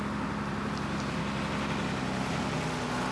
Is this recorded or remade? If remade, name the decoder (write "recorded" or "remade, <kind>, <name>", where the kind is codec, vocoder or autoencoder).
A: recorded